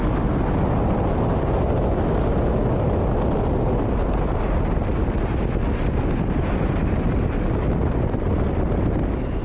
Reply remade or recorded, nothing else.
recorded